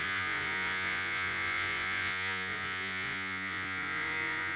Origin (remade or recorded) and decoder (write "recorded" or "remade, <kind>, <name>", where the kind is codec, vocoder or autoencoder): remade, vocoder, Vocos